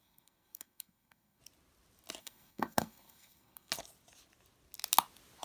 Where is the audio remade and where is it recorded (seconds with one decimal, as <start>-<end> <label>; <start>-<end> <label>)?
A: 0.0-1.4 remade; 1.4-2.2 recorded; 2.2-3.7 remade; 3.7-5.4 recorded